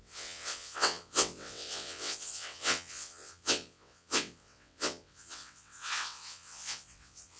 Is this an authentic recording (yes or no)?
no